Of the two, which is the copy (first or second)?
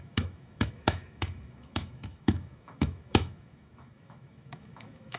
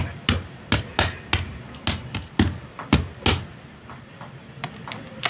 first